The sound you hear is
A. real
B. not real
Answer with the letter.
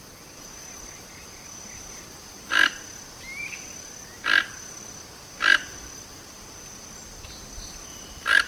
A